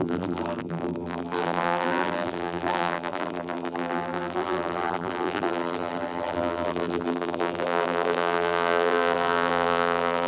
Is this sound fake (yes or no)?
yes